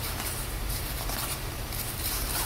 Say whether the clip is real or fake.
fake